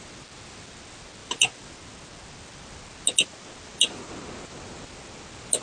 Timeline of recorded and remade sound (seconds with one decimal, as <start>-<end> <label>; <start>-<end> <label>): 0.0-5.6 recorded